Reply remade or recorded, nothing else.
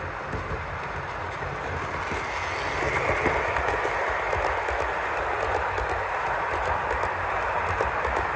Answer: recorded